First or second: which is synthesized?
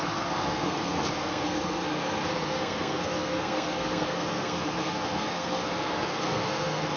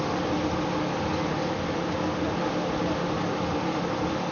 first